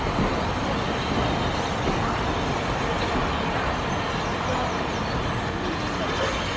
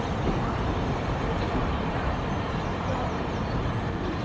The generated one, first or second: second